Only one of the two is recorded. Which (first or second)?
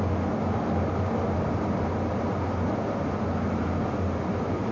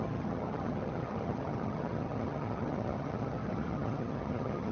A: first